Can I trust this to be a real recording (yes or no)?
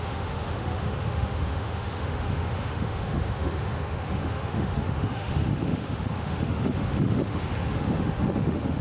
no